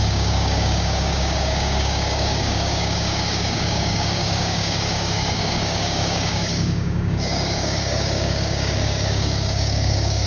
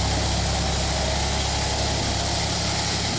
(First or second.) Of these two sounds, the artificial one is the first